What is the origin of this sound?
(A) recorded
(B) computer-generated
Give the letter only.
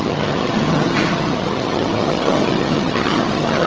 B